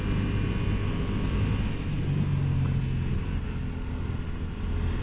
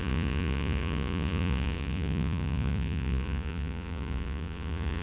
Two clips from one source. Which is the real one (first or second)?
first